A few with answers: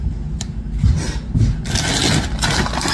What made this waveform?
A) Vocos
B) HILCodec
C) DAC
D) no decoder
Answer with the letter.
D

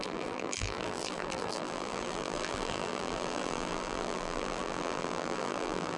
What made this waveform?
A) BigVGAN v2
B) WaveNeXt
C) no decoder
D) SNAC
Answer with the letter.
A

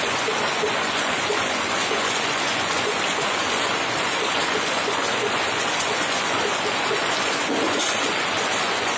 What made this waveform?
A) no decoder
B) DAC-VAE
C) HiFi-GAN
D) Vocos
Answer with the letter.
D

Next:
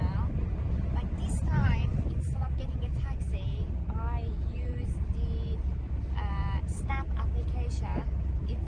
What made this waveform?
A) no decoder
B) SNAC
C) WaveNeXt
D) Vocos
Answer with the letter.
A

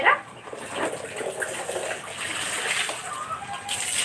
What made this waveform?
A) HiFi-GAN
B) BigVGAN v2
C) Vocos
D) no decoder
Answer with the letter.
D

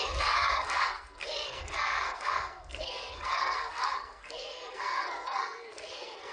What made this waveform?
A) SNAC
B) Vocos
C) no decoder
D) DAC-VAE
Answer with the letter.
A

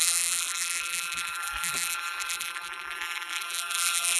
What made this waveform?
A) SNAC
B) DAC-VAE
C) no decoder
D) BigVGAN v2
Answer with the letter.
D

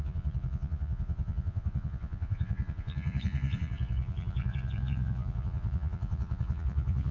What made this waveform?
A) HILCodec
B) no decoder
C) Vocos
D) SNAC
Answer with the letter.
C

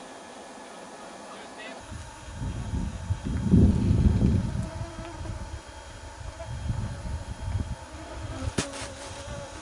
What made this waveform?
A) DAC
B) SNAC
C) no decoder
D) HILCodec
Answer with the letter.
C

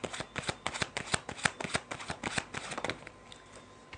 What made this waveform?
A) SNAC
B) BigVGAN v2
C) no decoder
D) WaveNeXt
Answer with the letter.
C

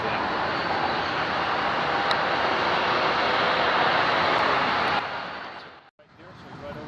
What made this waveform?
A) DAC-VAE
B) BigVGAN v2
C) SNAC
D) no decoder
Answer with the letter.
D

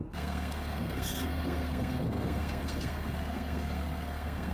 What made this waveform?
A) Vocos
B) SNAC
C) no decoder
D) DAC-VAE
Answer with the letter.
B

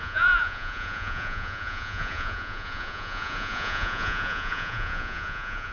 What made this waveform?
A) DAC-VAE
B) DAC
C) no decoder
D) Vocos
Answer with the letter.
D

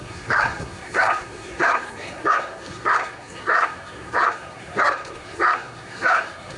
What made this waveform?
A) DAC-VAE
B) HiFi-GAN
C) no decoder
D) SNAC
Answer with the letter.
D